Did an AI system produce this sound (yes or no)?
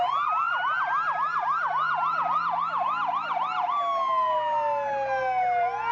no